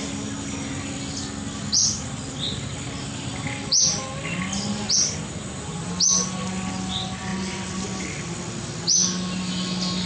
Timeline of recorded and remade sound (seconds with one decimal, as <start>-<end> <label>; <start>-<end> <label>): 0.0-10.1 recorded